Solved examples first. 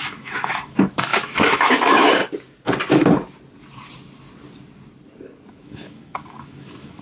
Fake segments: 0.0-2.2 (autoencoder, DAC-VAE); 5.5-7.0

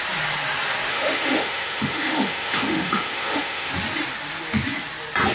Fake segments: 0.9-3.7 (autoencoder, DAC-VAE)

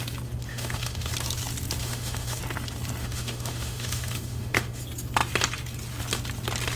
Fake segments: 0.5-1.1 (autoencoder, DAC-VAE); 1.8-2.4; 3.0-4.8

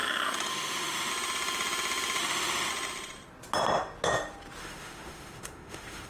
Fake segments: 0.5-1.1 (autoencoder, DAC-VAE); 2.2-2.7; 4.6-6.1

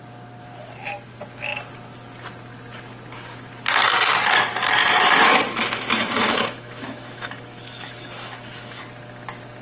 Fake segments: 4.8-8.8 (autoencoder, DAC-VAE)